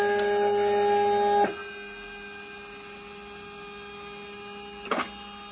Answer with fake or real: real